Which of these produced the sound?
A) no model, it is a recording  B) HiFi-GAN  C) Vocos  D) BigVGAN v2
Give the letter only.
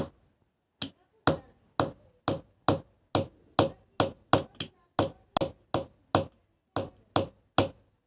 A